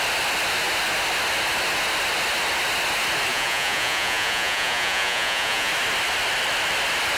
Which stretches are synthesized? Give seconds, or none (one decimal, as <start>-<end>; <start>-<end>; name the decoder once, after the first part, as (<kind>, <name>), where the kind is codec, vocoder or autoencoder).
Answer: 3.3-5.7 (vocoder, Vocos)